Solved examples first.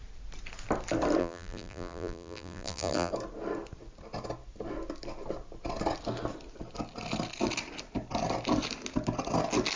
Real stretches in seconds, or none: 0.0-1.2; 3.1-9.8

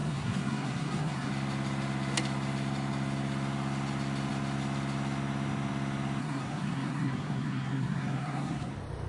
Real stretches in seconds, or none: 1.3-6.2; 8.7-9.1

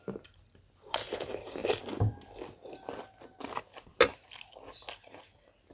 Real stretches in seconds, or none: 0.0-5.7

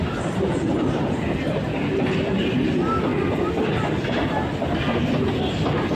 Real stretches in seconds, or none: 0.0-5.9

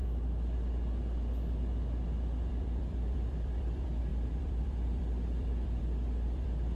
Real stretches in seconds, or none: 0.0-2.5

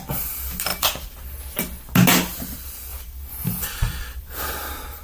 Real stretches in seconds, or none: 0.0-0.7; 1.4-2.9; 4.4-5.0